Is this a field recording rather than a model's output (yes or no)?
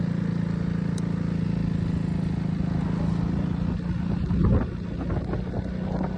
yes